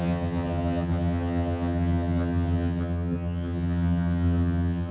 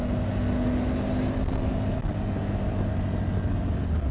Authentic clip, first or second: second